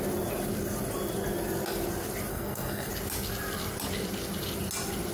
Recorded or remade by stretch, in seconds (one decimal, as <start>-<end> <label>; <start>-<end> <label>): 0.0-2.3 recorded; 2.3-2.9 remade; 2.9-5.1 recorded